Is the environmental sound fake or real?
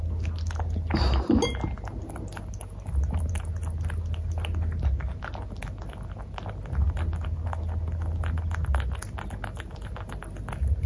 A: real